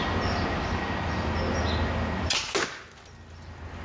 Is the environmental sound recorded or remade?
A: recorded